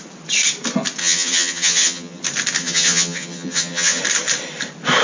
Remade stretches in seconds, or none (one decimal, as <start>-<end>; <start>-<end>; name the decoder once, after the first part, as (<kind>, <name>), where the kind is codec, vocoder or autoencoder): 1.0-2.2 (vocoder, HiFi-GAN); 2.6-4.0